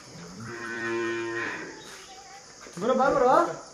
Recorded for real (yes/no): no